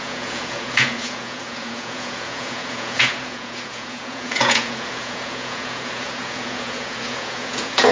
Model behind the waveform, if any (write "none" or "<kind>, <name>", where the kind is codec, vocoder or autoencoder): vocoder, Vocos